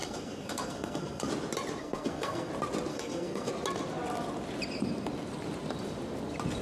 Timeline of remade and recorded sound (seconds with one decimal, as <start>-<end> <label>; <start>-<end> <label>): 0.0-1.3 remade; 1.3-1.8 recorded; 1.8-2.5 remade; 2.5-2.9 recorded; 2.9-3.5 remade; 3.5-6.6 recorded